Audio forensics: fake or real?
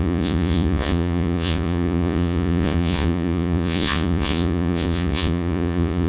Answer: fake